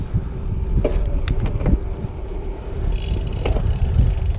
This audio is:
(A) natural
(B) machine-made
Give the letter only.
A